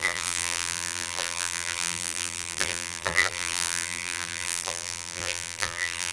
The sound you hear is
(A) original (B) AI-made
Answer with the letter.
B